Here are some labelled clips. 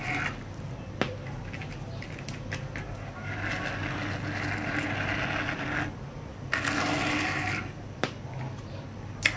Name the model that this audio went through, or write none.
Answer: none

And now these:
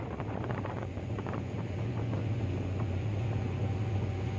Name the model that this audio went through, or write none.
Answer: vocoder, Vocos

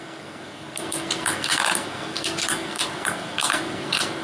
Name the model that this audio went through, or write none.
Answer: codec, SNAC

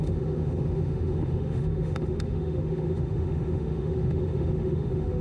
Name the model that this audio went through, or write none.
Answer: autoencoder, DAC-VAE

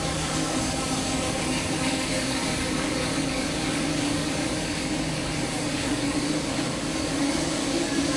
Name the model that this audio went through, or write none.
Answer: codec, DAC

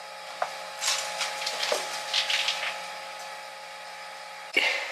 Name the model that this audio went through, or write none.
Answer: none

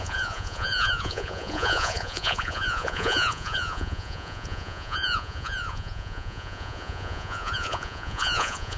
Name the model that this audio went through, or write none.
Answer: vocoder, Vocos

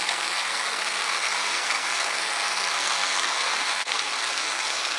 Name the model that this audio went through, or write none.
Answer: codec, SNAC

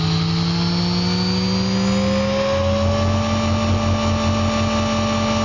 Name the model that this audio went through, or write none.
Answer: none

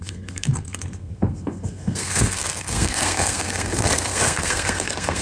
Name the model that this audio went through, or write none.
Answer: codec, SNAC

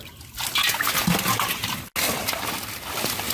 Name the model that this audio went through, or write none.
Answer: none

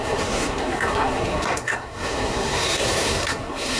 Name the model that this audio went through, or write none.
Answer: codec, SNAC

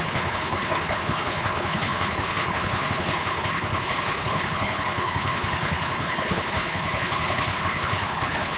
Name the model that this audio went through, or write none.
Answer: codec, HILCodec